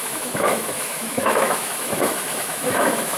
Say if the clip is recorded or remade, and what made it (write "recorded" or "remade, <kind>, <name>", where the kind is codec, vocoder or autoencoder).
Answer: remade, autoencoder, DAC-VAE